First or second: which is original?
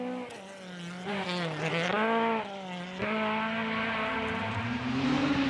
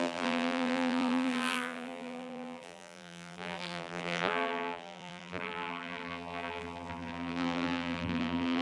first